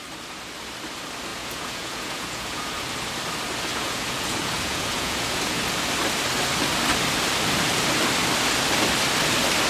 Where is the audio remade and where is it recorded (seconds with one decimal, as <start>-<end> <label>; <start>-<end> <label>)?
0.0-1.3 recorded; 1.3-2.7 remade; 2.7-3.7 recorded; 3.7-5.6 remade; 5.6-9.7 recorded